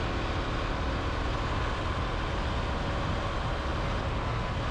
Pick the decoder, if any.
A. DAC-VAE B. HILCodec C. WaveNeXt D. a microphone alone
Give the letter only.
D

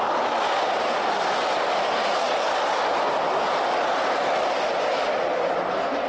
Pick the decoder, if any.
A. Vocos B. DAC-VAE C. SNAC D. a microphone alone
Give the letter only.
D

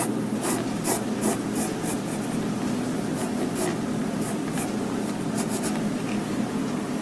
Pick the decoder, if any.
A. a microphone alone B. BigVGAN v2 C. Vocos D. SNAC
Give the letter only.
A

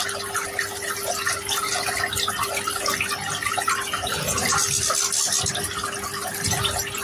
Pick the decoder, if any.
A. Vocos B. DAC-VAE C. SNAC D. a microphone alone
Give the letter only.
D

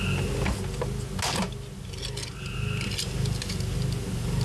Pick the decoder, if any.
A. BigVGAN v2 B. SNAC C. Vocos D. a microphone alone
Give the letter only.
D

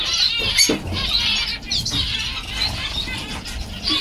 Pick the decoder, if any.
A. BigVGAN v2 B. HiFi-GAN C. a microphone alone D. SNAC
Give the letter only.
C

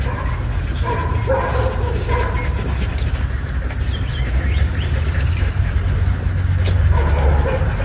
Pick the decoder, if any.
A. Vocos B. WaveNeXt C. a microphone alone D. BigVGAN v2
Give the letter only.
C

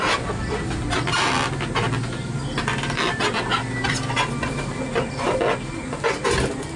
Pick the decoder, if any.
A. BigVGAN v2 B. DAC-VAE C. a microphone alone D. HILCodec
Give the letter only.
C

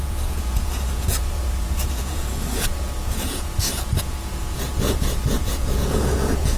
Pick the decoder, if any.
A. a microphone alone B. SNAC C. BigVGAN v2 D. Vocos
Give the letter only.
D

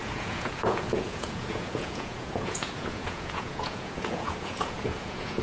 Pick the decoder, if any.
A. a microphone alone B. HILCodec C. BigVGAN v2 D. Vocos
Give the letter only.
D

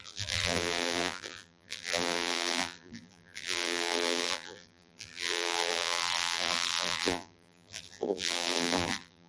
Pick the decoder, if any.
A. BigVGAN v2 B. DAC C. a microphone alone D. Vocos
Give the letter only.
A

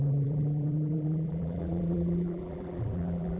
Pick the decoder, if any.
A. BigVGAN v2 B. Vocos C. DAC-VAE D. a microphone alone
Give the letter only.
A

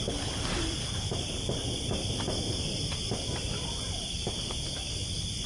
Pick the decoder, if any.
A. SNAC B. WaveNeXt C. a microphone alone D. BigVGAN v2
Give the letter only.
C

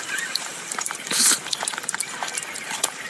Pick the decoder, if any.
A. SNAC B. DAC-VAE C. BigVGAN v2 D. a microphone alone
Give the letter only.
C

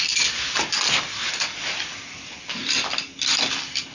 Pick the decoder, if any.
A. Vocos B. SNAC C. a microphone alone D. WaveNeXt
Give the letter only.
C